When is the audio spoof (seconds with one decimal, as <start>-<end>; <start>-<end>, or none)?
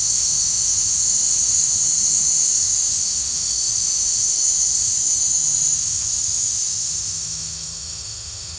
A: 0.0-8.6